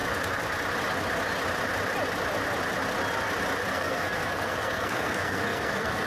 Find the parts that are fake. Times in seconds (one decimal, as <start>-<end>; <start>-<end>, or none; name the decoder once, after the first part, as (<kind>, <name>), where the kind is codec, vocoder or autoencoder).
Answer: 3.7-6.1 (codec, SNAC)